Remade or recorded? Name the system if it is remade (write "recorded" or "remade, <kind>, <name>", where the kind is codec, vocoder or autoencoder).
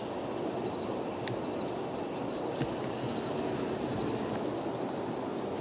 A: recorded